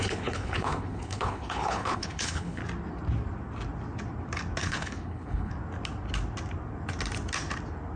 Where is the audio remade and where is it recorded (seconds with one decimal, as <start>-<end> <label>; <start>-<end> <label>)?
0.0-2.6 remade; 2.6-4.6 recorded; 4.6-5.5 remade; 5.5-8.0 recorded